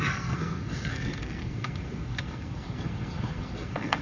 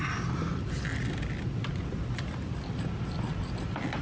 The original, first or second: second